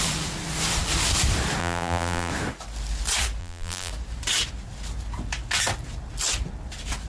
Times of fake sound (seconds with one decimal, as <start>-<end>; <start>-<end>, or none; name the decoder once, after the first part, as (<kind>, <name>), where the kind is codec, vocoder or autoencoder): 1.6-2.3 (vocoder, BigVGAN v2); 3.4-3.9